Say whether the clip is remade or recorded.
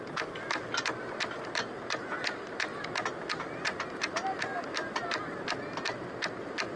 recorded